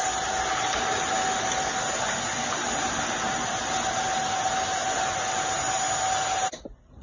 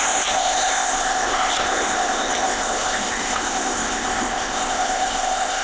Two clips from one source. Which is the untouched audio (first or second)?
first